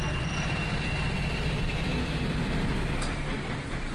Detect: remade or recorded recorded